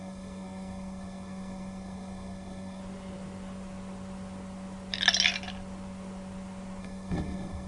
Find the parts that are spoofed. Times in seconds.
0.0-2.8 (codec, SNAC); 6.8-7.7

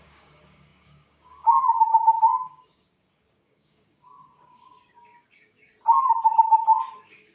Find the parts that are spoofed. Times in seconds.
0.0-5.7 (codec, DAC); 6.4-7.3